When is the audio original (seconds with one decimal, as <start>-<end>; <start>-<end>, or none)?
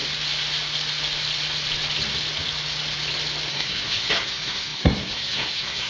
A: 0.0-3.5